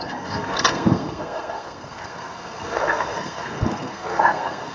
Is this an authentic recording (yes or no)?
no